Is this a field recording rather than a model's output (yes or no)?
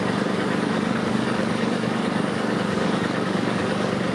no